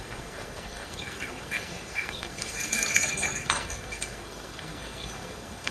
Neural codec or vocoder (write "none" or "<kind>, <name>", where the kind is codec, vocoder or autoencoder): codec, SNAC